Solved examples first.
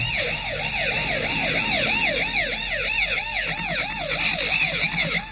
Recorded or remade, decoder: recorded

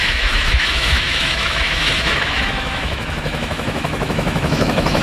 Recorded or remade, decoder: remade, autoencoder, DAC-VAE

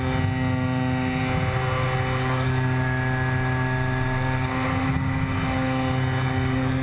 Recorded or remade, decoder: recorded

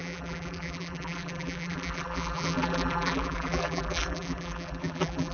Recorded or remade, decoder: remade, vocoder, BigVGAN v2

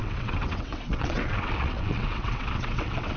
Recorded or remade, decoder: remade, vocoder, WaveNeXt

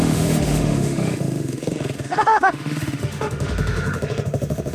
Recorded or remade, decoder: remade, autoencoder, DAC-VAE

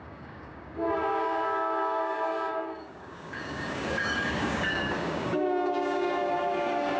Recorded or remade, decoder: remade, codec, DAC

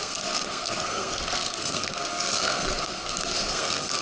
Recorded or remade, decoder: remade, codec, SNAC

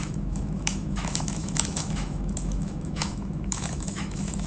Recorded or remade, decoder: remade, autoencoder, DAC-VAE